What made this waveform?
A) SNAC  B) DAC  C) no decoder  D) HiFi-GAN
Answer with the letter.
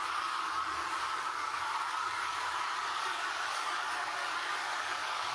B